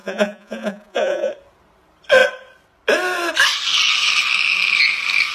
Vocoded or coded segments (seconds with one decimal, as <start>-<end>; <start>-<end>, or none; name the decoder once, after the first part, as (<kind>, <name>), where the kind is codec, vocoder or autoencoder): 0.0-1.3 (vocoder, Vocos)

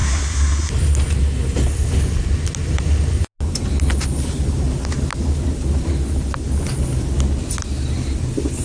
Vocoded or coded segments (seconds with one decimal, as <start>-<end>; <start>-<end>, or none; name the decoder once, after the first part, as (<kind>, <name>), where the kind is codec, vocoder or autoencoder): 0.0-0.7 (codec, SNAC)

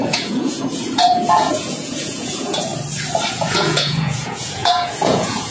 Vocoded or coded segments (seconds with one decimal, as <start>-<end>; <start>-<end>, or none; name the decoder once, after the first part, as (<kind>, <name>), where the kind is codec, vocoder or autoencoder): 0.0-2.7 (vocoder, Vocos); 3.3-5.5

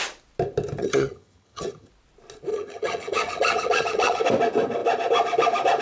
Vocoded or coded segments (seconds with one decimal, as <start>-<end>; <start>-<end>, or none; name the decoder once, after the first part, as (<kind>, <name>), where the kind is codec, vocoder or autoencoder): 0.8-1.9 (vocoder, HiFi-GAN); 2.5-4.2

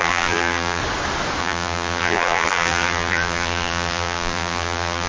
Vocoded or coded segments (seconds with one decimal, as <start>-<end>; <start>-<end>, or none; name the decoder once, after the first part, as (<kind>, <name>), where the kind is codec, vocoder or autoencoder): 0.0-0.8 (vocoder, BigVGAN v2); 1.4-5.1

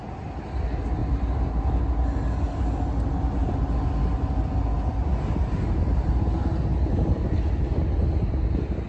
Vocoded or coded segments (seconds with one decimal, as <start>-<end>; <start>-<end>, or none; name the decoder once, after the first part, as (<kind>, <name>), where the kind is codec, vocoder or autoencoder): none